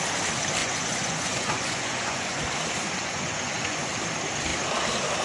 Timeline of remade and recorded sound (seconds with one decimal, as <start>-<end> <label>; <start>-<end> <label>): 0.0-0.6 recorded; 0.6-2.4 remade; 2.4-3.0 recorded; 3.0-3.9 remade; 3.9-5.2 recorded